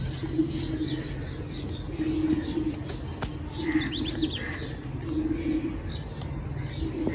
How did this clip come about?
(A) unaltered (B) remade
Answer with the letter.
A